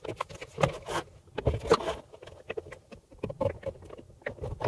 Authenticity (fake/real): real